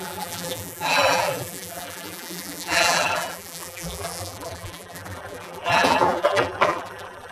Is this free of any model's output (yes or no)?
no